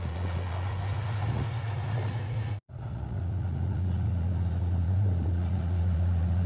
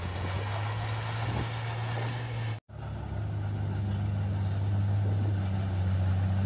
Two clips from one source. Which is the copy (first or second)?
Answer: first